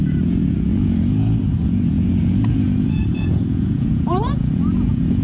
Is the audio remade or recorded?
remade